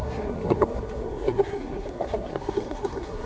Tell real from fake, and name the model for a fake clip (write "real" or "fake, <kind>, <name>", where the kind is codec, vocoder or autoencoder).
fake, codec, SNAC